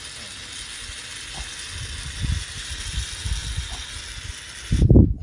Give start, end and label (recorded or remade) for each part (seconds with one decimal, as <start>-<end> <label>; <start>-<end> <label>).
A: 0.0-5.2 recorded